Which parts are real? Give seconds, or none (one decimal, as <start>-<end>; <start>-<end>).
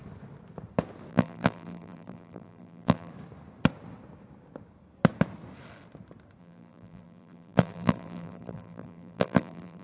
0.0-1.1; 3.1-6.4